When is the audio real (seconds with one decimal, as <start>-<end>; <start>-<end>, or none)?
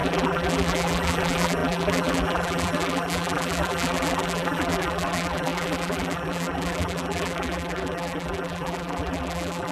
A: none